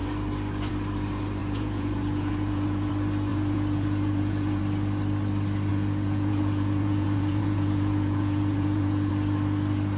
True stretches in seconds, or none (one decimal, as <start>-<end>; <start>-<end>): 0.0-1.4; 2.9-3.3; 4.6-5.7; 9.1-10.0